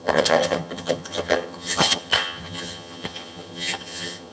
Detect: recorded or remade remade